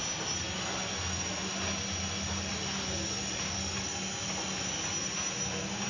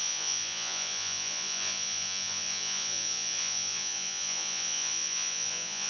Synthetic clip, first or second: second